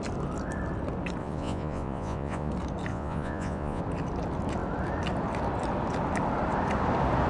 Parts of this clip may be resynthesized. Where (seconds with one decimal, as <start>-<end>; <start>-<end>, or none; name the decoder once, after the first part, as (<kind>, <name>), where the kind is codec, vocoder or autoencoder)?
1.2-2.5 (vocoder, Vocos); 2.9-3.8